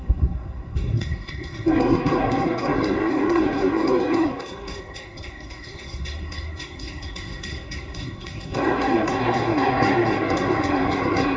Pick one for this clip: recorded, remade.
remade